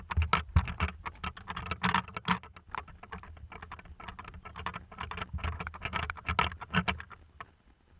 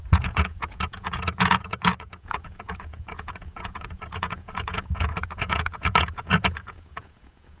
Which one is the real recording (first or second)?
first